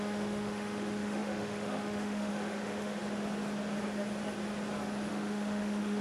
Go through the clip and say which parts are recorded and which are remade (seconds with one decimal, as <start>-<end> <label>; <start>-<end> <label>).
0.0-3.0 remade; 3.0-5.1 recorded; 5.1-6.0 remade